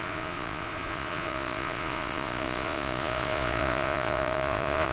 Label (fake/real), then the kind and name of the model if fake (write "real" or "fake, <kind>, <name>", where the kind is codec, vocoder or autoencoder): fake, vocoder, Vocos